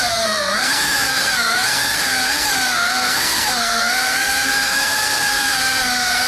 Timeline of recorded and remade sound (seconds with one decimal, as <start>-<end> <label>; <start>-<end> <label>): 0.0-6.3 remade